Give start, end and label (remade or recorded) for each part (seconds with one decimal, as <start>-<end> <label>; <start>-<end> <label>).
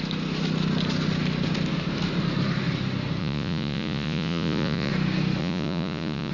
0.0-3.2 recorded; 3.2-4.9 remade; 4.9-5.4 recorded; 5.4-6.3 remade